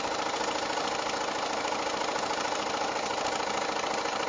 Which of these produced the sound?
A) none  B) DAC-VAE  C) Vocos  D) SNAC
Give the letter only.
A